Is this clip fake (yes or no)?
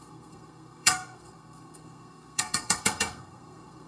yes